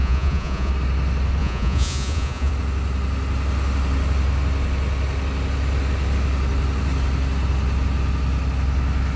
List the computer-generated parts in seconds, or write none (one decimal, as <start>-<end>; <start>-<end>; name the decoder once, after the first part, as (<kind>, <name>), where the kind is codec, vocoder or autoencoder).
0.0-0.7 (vocoder, Vocos); 1.4-2.5